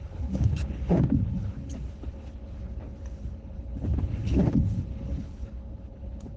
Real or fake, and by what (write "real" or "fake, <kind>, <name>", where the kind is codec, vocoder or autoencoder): fake, codec, HILCodec